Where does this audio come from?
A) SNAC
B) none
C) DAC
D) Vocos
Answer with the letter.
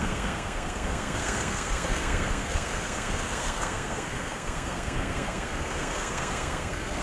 A